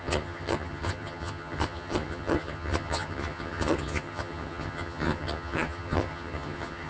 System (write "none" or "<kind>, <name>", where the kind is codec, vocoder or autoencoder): vocoder, HiFi-GAN